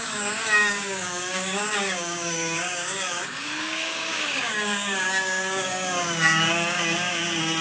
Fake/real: fake